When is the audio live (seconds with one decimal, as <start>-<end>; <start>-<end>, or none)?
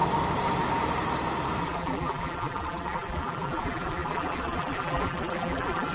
0.0-1.6